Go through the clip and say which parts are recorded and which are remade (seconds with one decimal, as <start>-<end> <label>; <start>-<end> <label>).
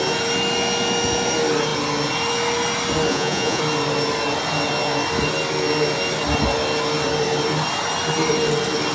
0.0-3.1 recorded; 3.1-3.6 remade; 3.6-8.9 recorded